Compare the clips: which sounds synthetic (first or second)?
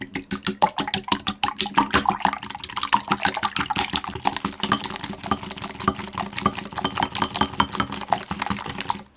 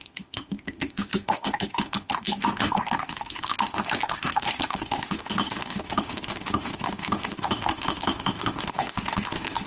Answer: second